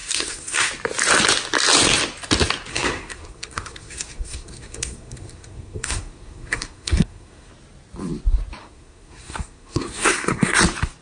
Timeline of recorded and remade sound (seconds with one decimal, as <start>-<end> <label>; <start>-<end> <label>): 0.0-0.7 remade; 0.7-2.7 recorded; 2.7-7.5 remade; 7.5-8.6 recorded; 8.6-10.6 remade; 10.6-11.0 recorded